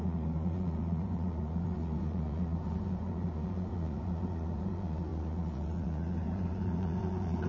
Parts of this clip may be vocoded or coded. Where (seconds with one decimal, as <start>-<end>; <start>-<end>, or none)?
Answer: 0.0-7.5